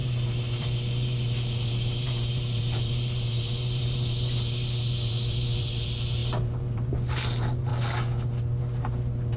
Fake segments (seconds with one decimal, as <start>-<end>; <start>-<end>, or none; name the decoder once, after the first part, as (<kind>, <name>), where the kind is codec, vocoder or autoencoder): 0.0-7.7 (vocoder, BigVGAN v2); 8.6-9.4